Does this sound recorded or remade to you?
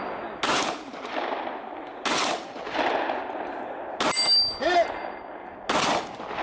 recorded